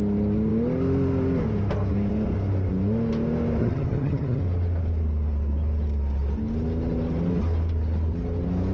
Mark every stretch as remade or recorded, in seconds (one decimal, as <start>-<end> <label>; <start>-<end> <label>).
0.0-3.6 recorded; 3.6-4.4 remade; 4.4-8.7 recorded